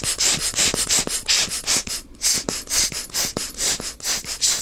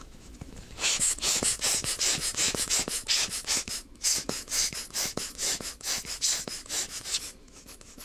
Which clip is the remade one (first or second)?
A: second